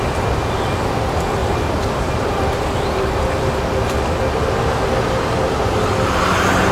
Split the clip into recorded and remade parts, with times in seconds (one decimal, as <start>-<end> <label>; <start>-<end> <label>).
0.0-1.4 recorded; 1.4-3.1 remade; 3.1-6.7 recorded